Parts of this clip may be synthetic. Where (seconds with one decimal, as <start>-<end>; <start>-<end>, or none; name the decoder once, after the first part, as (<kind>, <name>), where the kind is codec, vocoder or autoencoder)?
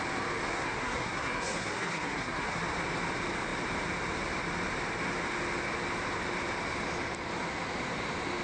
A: 0.5-2.6 (codec, SNAC)